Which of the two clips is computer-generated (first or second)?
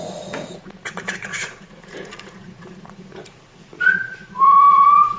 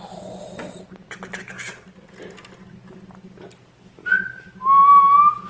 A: first